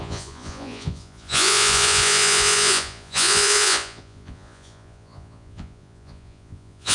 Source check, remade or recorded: remade